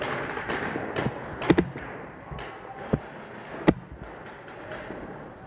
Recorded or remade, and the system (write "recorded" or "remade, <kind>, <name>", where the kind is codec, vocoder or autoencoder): recorded